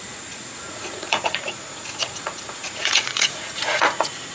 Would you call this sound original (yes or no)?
no